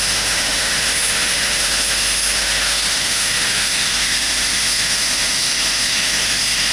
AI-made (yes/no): yes